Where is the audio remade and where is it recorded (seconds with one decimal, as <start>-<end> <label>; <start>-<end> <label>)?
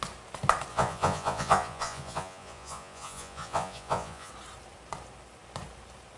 0.0-0.7 recorded; 0.7-4.3 remade; 4.3-6.2 recorded